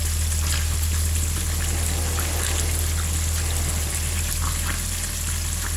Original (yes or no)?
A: yes